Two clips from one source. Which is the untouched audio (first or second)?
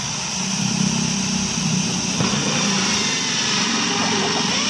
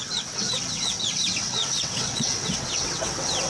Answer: first